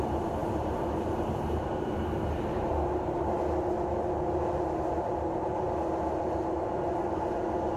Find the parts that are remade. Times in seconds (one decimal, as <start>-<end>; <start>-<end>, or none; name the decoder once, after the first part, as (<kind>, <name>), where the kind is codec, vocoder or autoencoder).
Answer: none